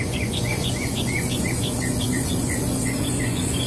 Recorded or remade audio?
remade